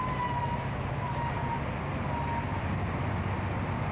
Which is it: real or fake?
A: real